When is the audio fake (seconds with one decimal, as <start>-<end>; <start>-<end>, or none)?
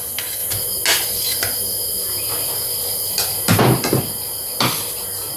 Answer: none